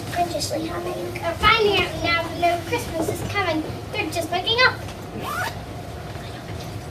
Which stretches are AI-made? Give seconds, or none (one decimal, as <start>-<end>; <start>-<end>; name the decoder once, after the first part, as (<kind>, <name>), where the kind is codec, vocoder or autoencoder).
2.4-3.1 (autoencoder, DAC-VAE)